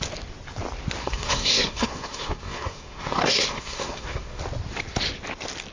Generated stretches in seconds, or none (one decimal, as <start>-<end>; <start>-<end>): 1.0-4.4